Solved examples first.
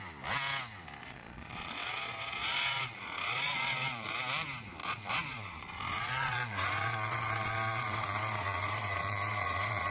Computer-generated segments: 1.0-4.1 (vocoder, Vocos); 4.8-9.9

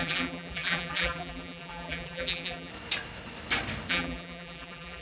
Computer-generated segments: 0.0-2.7 (vocoder, BigVGAN v2); 3.9-5.0

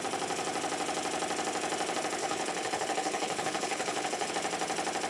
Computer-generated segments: 2.2-4.3 (codec, HILCodec)

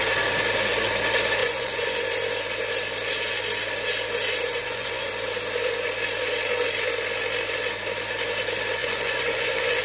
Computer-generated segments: 1.4-2.0 (vocoder, Vocos); 4.5-5.1; 8.8-9.8

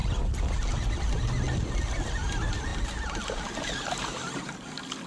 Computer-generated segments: none